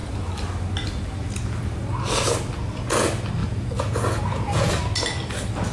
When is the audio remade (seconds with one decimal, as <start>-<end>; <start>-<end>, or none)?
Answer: 3.4-4.7